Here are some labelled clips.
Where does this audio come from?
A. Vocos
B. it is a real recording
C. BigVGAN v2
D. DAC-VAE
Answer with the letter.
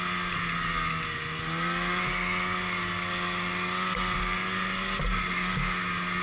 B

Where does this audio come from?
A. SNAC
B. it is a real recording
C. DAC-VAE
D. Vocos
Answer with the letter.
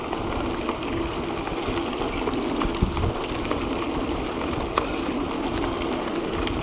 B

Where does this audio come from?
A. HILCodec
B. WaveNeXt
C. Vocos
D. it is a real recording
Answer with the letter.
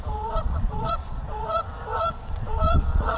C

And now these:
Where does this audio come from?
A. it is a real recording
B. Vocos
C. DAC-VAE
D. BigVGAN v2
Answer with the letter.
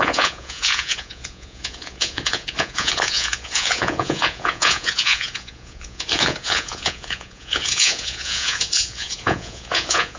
B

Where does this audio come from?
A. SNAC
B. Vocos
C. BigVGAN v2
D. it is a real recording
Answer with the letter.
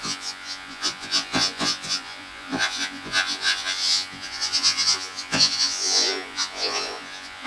B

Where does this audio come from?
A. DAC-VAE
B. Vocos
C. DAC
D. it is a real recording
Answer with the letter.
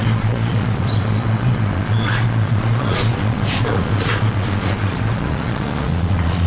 B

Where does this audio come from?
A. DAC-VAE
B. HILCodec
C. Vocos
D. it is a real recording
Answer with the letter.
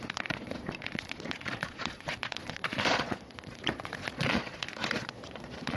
C